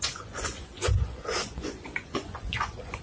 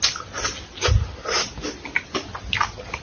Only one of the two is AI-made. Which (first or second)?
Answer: first